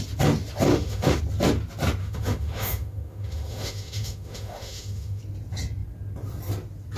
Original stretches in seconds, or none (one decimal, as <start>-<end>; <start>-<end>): 0.0-0.7; 1.2-2.0; 5.2-7.0